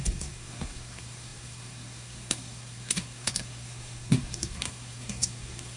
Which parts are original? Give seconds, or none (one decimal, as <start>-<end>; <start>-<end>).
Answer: none